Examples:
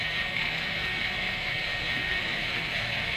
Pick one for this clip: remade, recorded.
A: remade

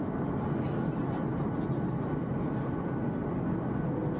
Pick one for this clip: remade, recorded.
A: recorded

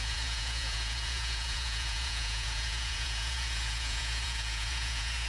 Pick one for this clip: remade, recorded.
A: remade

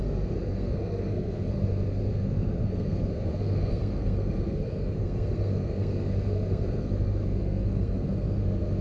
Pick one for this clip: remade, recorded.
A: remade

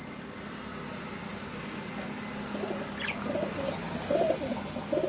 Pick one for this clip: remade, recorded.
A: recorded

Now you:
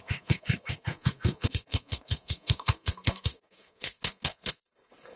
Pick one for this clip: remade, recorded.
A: remade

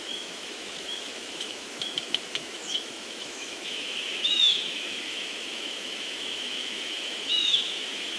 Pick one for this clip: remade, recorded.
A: remade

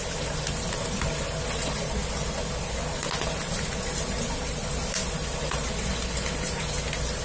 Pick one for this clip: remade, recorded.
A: recorded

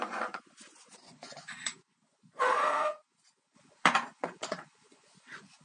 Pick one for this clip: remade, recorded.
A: remade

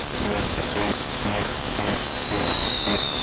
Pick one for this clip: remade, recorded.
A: remade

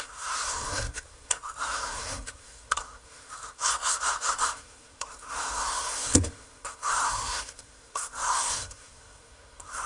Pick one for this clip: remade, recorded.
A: remade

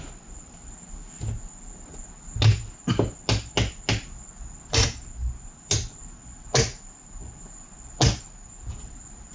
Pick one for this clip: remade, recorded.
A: recorded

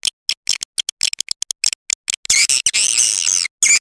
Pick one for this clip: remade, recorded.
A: recorded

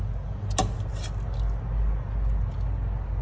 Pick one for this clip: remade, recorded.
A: recorded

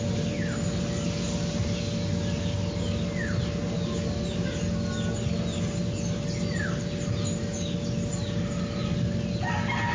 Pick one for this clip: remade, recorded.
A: recorded